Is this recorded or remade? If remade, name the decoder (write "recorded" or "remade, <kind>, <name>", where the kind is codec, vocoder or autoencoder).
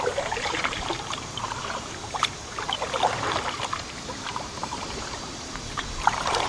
remade, vocoder, BigVGAN v2